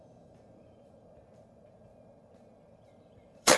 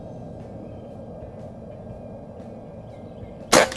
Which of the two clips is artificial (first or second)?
first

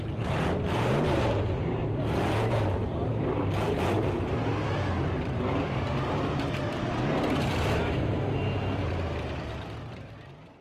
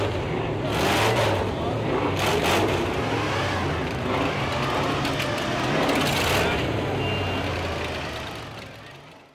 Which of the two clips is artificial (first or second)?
first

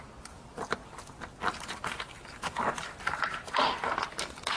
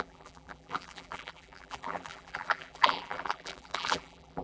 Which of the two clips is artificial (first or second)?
second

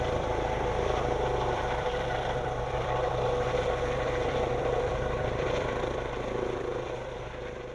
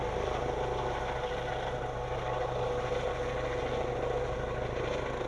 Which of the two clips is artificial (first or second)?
first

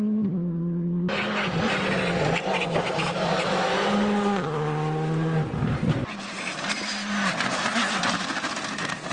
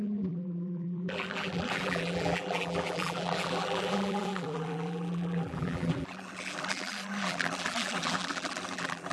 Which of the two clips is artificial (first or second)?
second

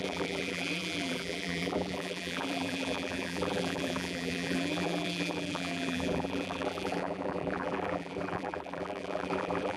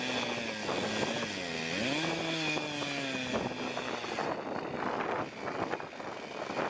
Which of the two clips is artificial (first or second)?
first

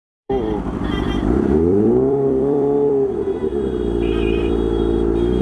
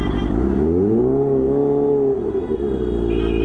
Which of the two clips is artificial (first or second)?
first